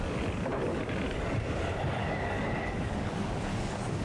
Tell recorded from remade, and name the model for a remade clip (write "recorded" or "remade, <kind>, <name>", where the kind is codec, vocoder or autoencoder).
remade, codec, DAC